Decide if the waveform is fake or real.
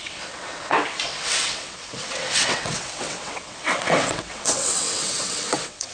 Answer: fake